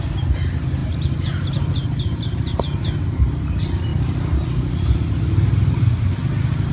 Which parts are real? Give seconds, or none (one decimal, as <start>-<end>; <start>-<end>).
0.0-6.7